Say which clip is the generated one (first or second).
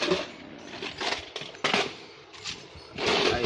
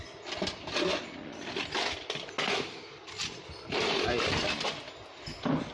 first